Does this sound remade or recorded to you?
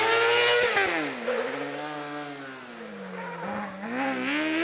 recorded